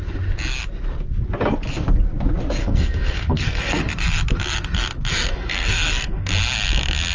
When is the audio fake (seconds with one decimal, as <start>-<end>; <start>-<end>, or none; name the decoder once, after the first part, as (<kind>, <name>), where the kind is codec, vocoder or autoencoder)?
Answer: 2.6-3.8 (codec, SNAC); 5.1-6.3